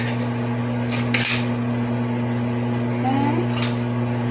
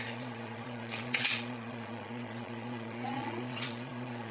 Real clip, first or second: first